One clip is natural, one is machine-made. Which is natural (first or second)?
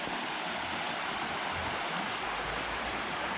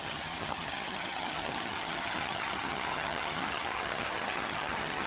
first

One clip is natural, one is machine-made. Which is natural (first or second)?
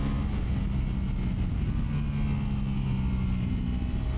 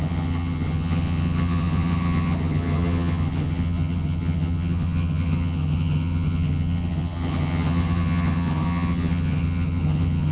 first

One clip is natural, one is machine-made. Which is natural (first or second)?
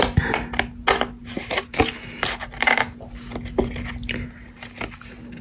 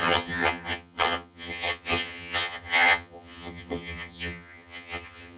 first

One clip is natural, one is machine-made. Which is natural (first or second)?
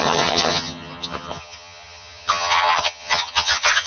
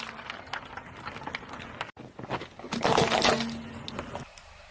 second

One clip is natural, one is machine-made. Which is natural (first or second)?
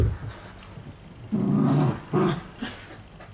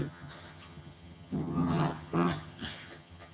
first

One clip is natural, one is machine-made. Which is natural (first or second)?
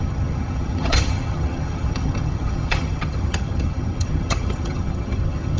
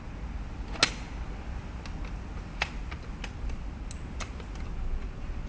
second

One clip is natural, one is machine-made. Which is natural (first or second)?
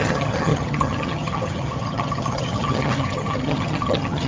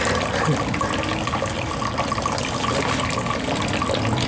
second